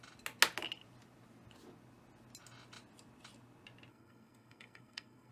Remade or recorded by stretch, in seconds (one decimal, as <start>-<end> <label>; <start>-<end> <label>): 0.0-3.9 recorded; 3.9-5.3 remade